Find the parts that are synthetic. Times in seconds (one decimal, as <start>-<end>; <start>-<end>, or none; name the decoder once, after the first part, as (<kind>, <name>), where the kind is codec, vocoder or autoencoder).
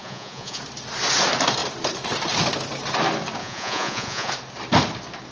0.0-0.6 (vocoder, Vocos); 3.4-4.3